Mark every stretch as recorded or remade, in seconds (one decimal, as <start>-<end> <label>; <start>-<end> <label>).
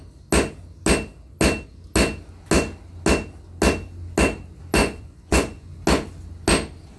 0.0-4.8 recorded; 4.8-5.8 remade; 5.8-7.0 recorded